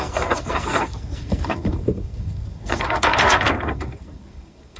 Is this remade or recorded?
remade